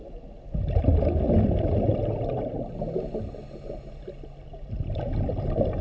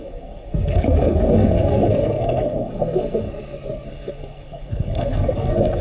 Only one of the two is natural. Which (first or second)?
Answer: first